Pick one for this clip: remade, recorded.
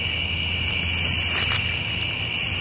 recorded